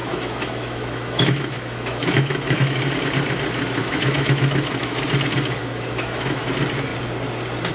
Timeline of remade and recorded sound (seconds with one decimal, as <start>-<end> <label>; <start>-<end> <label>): 0.0-2.8 remade; 2.8-3.8 recorded; 3.8-5.0 remade; 5.0-5.6 recorded; 5.6-6.5 remade; 6.5-7.7 recorded